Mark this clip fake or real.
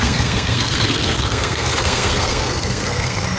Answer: fake